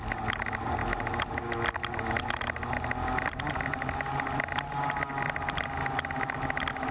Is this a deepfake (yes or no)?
no